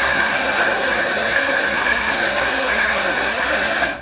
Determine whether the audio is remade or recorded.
remade